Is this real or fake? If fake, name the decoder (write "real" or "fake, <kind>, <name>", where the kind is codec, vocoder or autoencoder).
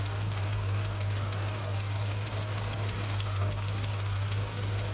fake, codec, DAC